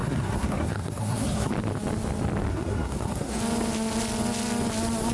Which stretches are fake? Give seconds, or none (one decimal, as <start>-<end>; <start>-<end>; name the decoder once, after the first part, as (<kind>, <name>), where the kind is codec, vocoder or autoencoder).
0.0-1.5 (codec, SNAC); 2.5-3.4